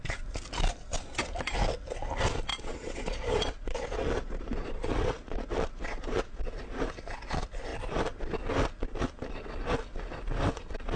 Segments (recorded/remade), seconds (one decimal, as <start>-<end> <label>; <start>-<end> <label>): 0.0-2.5 recorded; 2.5-6.4 remade; 6.4-11.0 recorded